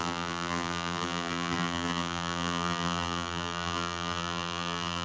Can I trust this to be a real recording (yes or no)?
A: no